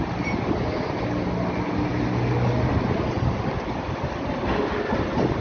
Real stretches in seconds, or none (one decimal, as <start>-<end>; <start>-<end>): 0.0-5.4